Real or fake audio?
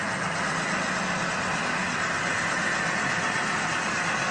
real